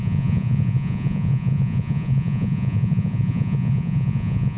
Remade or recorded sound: remade